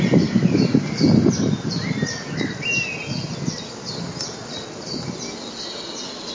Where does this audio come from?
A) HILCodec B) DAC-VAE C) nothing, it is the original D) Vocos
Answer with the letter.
C